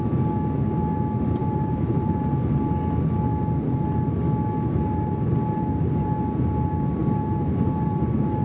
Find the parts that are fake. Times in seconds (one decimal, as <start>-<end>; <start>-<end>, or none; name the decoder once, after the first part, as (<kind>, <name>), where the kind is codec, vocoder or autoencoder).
1.4-2.5 (vocoder, BigVGAN v2); 7.0-8.0